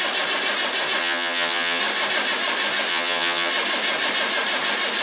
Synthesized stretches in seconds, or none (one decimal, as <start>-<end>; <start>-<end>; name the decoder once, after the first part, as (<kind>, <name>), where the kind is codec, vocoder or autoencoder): 1.0-1.8 (vocoder, HiFi-GAN); 2.9-3.5